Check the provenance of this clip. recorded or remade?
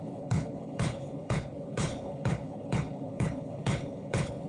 remade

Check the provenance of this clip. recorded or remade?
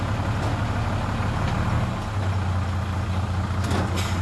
recorded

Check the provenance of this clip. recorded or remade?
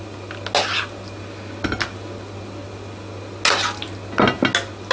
recorded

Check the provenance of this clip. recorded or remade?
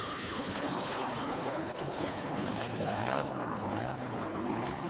remade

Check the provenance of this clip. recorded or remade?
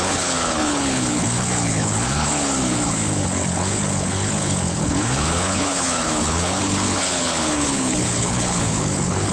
remade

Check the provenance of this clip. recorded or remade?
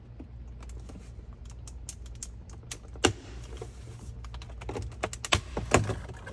recorded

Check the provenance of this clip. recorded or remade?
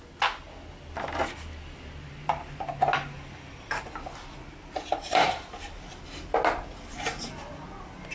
recorded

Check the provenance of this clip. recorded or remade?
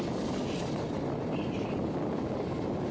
recorded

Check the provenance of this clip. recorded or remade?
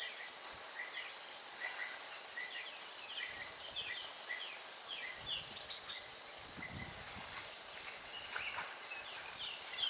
recorded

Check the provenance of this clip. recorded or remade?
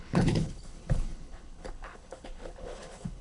remade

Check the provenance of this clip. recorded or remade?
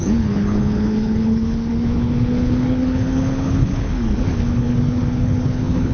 remade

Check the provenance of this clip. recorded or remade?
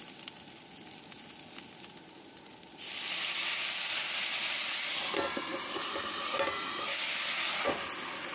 recorded